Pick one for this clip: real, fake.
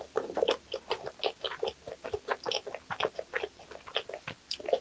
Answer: real